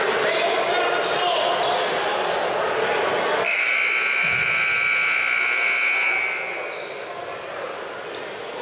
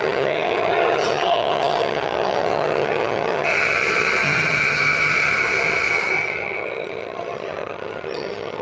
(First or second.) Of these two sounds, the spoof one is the second